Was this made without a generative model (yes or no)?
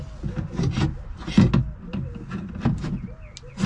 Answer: yes